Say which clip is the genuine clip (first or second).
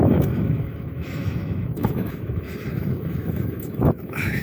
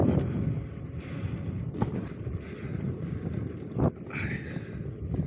second